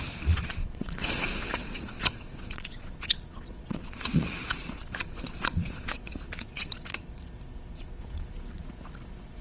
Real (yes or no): no